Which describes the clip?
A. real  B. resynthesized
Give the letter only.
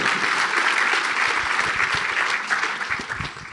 A